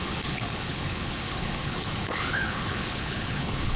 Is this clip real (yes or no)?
no